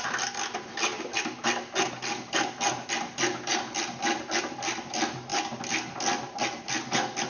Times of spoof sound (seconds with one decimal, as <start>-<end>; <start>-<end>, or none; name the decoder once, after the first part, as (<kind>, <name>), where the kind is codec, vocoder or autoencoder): none